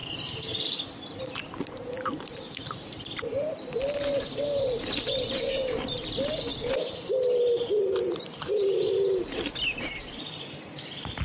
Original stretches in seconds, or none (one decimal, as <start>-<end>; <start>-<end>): 0.0-11.2